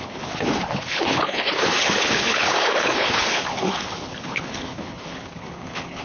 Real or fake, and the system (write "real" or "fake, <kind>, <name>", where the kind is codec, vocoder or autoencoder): fake, codec, HILCodec